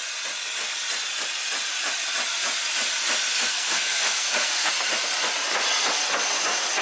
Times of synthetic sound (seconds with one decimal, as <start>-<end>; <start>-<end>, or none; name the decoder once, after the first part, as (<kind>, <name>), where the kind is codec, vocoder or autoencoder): 3.5-4.7 (codec, SNAC)